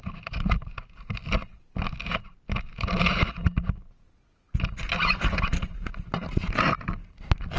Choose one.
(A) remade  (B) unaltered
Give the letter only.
B